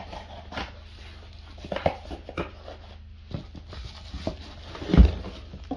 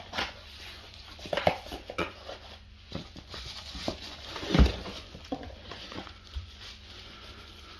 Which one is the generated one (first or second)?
second